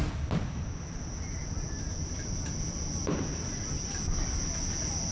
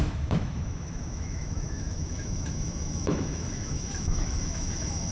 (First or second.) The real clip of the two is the first